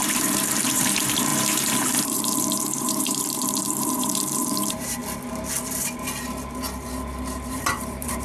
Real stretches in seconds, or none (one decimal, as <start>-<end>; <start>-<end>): 5.0-7.5